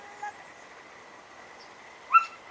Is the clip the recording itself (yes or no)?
yes